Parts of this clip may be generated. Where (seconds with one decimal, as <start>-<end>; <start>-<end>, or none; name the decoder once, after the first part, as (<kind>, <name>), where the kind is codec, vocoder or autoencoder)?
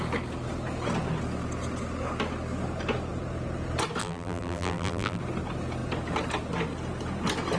4.0-5.2 (vocoder, BigVGAN v2)